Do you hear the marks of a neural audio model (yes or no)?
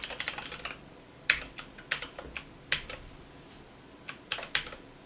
no